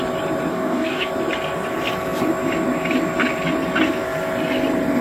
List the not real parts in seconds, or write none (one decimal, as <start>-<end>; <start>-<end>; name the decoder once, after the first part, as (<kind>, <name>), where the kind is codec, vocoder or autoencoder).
0.5-1.1 (codec, DAC)